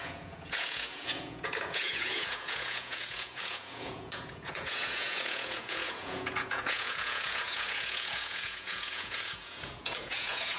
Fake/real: fake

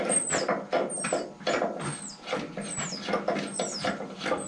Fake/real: real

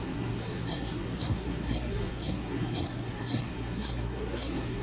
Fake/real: fake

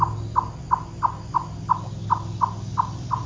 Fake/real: real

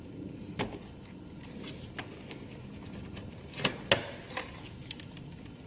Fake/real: real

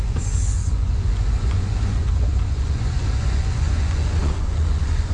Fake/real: fake